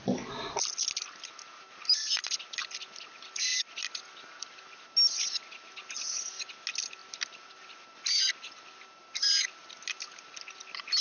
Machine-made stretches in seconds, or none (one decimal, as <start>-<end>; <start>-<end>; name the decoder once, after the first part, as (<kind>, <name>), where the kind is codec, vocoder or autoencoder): 9.0-9.7 (vocoder, BigVGAN v2)